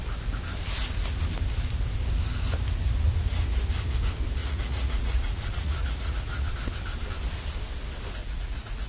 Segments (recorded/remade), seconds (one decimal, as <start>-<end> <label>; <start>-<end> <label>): 0.0-4.4 recorded; 4.4-6.5 remade; 6.5-8.2 recorded; 8.2-8.9 remade